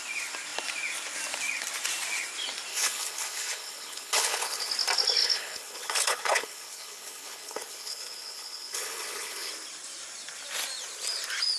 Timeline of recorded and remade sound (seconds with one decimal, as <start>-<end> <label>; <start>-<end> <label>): 0.0-2.7 recorded; 2.7-4.7 remade; 4.7-5.2 recorded; 5.2-9.5 remade; 9.5-11.6 recorded